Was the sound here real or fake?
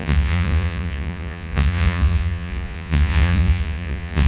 fake